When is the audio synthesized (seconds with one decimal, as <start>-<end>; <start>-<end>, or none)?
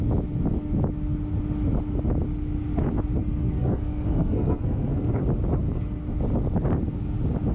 3.2-5.2